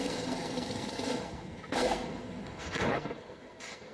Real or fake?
fake